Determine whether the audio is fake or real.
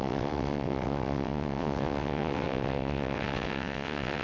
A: fake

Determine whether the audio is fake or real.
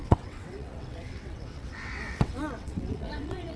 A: fake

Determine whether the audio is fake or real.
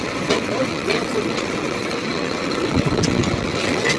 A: fake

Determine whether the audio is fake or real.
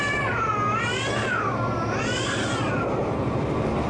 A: real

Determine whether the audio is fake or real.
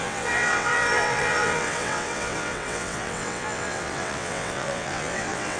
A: fake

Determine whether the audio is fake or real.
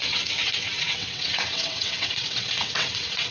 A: fake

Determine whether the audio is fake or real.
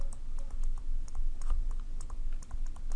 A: real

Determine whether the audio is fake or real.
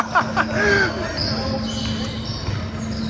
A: real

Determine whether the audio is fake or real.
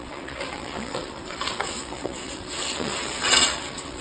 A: fake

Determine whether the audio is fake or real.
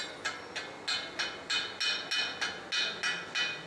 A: real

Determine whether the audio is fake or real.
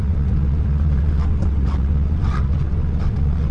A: fake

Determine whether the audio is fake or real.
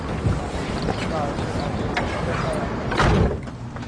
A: real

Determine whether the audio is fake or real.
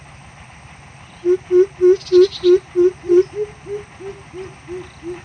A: real